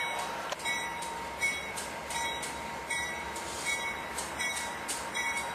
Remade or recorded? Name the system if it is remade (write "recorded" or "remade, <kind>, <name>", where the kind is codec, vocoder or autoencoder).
remade, vocoder, BigVGAN v2